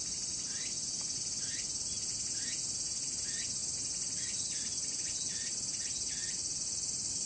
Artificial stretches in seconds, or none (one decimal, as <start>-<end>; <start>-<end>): 3.6-5.3